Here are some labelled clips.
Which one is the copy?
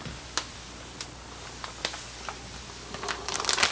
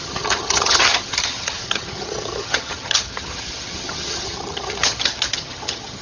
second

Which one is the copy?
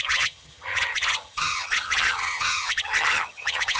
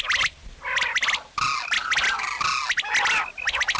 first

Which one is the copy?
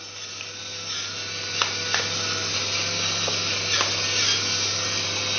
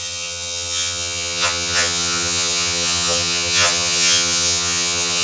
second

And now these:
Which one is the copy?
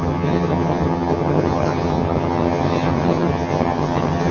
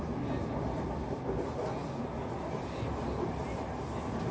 first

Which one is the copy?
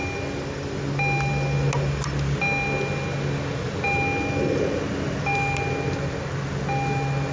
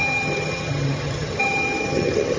second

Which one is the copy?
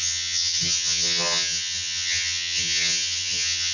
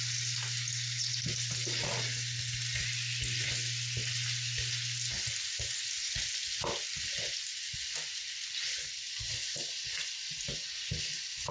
first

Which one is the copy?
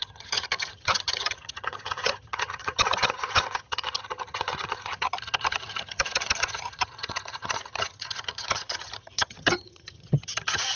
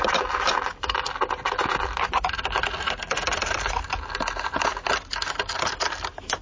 first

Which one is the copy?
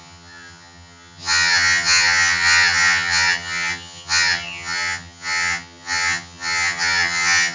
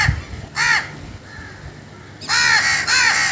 first